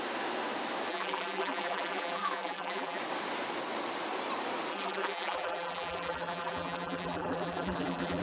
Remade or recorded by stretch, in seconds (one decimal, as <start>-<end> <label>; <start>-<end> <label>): 0.0-0.9 recorded; 0.9-3.0 remade; 3.0-4.7 recorded; 4.7-8.2 remade